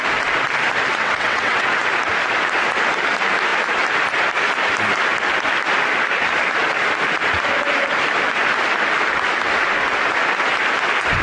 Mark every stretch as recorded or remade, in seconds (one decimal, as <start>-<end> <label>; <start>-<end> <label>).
0.0-0.9 recorded; 0.9-1.7 remade; 1.7-11.2 recorded